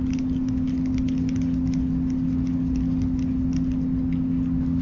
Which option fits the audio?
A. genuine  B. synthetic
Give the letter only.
A